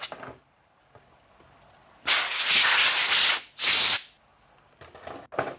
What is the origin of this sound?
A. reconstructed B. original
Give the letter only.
B